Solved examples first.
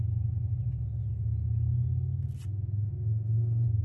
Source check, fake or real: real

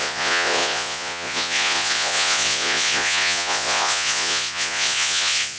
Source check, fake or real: fake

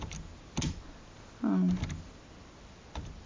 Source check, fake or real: real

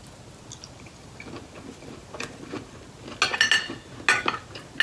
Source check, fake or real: real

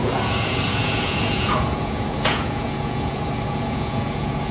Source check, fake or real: fake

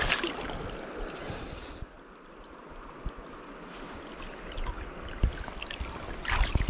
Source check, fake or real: real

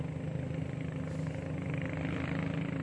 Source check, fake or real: real